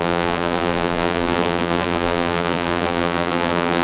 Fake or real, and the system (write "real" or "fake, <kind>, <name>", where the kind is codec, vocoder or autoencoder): fake, vocoder, BigVGAN v2